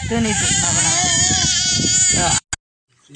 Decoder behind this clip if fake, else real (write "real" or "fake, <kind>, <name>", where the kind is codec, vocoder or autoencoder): real